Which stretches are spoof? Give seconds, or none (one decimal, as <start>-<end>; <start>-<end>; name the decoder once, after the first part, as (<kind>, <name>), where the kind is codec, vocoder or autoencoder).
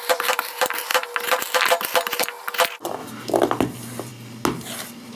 none